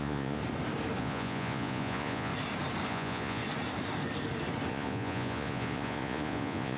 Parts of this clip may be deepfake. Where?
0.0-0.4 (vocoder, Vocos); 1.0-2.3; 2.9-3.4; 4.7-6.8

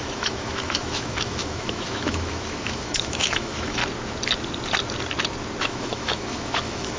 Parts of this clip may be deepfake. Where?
0.0-3.8 (autoencoder, DAC-VAE); 5.6-7.0

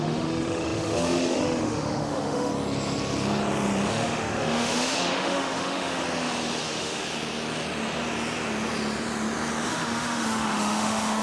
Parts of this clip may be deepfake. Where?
0.0-2.5 (autoencoder, DAC-VAE); 3.9-6.0; 6.6-7.0; 9.7-11.2

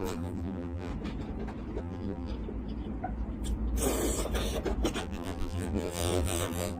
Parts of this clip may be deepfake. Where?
0.0-0.9 (vocoder, BigVGAN v2); 1.8-2.3; 5.0-6.8

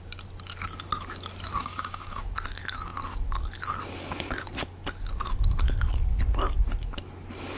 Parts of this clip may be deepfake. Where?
1.6-2.2 (codec, DAC)

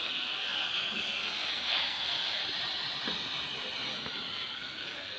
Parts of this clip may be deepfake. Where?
0.0-2.4 (codec, SNAC); 4.3-5.2

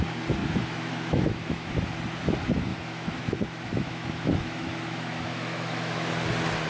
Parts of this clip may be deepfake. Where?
0.4-1.7 (autoencoder, DAC-VAE); 2.7-6.1